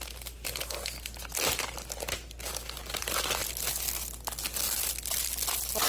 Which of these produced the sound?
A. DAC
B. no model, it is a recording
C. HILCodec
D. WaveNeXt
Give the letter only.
B